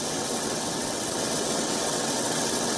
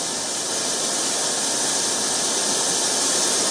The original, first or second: second